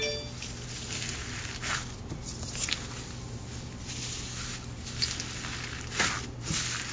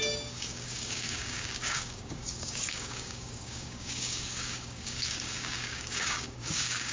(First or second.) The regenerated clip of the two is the second